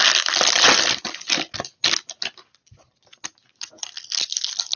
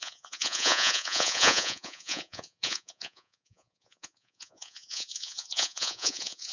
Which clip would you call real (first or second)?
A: first